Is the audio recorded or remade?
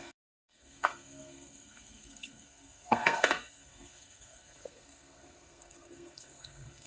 remade